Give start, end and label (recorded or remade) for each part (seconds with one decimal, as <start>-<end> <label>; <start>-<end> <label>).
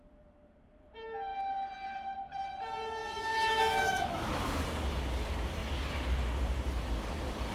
0.0-3.0 recorded; 3.0-4.3 remade; 4.3-7.5 recorded